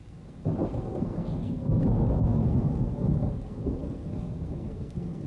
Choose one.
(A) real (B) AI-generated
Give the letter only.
B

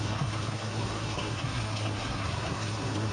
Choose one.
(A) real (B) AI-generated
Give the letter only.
B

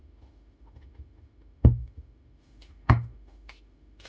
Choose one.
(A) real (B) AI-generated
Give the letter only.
B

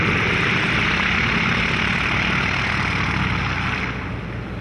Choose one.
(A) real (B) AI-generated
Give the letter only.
A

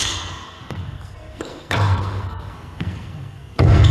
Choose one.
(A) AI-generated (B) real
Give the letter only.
A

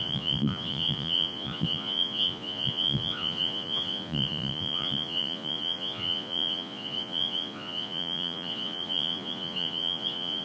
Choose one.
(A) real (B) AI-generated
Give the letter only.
B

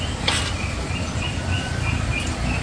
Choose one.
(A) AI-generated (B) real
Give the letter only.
B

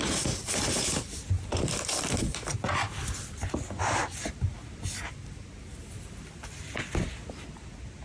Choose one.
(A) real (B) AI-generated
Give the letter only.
A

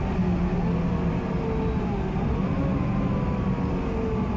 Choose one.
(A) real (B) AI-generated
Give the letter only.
A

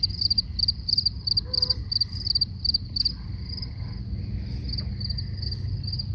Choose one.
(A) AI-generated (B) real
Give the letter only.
B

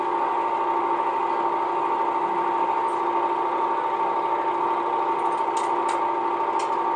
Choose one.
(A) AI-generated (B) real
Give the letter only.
B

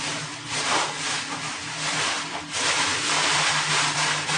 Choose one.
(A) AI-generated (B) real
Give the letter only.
B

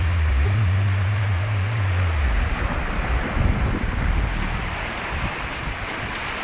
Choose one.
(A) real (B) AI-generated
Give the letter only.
A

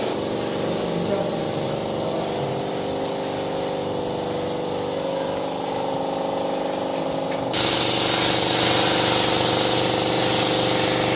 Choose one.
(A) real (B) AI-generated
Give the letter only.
A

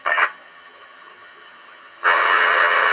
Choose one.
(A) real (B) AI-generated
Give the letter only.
B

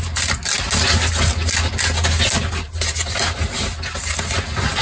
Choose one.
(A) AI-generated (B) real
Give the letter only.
B